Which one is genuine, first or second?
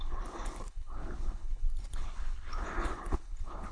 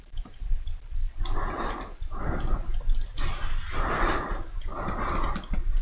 second